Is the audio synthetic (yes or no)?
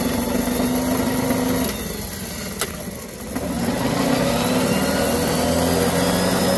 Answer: no